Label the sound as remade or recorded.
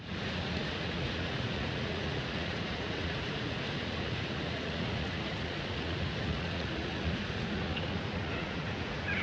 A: remade